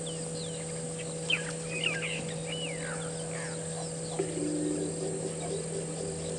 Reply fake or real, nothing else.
real